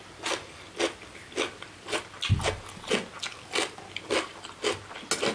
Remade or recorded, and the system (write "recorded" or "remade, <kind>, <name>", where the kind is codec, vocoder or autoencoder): recorded